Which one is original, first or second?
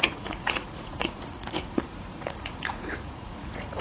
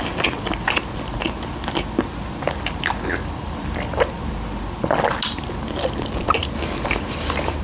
second